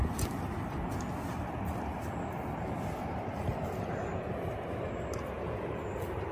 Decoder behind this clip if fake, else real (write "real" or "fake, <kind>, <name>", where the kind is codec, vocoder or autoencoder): real